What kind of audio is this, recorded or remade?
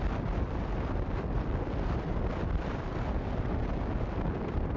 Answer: recorded